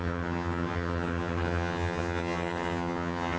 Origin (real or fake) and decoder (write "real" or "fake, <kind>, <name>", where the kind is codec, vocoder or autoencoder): fake, vocoder, HiFi-GAN